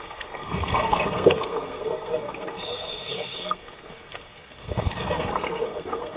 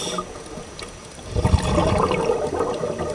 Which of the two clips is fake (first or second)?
first